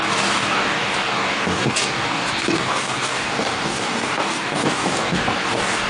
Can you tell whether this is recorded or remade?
remade